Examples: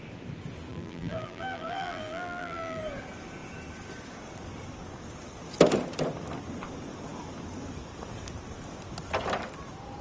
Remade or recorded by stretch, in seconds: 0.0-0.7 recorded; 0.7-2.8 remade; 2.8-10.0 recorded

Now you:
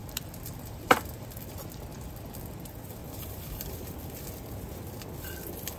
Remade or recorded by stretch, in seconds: 0.0-1.3 remade; 1.3-3.0 recorded; 3.0-4.0 remade; 4.0-5.8 recorded

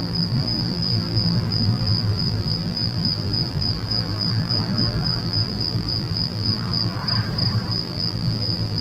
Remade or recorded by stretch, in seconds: 0.0-7.0 remade; 7.0-7.7 recorded; 7.7-8.8 remade